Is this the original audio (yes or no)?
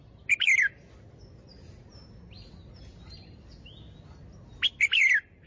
yes